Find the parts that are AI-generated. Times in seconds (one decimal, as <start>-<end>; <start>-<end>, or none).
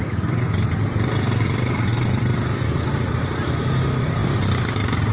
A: none